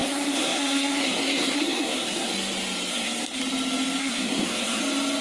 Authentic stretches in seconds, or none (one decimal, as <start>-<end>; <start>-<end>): 2.3-2.9; 3.4-4.0; 4.8-5.2